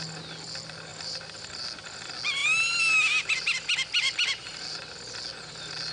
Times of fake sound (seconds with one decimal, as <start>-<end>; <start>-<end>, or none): 0.9-1.5; 2.4-4.9